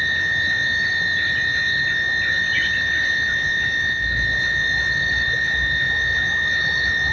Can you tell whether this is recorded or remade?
recorded